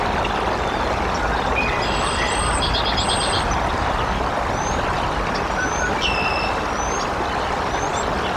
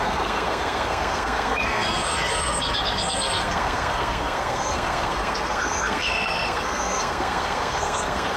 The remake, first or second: second